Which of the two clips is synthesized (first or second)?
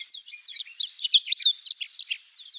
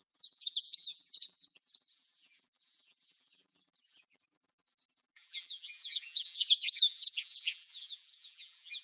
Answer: second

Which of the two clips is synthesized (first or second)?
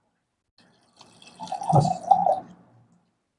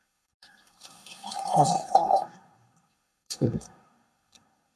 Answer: second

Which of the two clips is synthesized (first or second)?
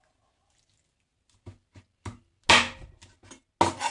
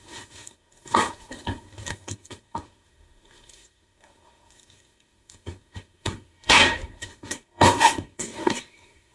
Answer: second